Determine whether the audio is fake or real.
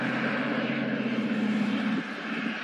fake